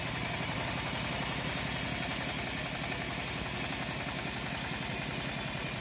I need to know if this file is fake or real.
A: real